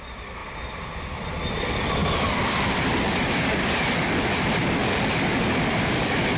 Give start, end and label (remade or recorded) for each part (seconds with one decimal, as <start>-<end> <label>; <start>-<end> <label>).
0.0-0.4 remade; 0.4-1.0 recorded; 1.0-6.4 remade